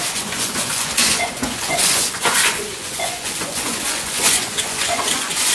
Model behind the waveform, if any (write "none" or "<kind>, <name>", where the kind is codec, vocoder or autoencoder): vocoder, Vocos